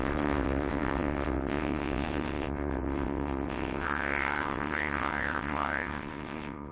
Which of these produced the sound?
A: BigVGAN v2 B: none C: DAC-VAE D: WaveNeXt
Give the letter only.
D